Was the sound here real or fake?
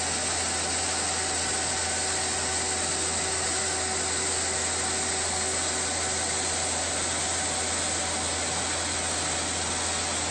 real